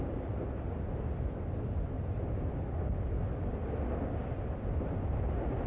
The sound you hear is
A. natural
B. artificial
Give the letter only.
A